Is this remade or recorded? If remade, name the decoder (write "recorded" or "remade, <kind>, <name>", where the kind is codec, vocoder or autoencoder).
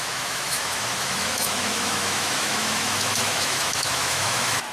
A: remade, autoencoder, DAC-VAE